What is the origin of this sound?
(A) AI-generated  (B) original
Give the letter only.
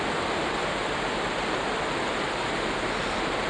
B